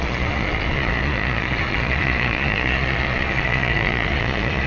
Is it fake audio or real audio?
fake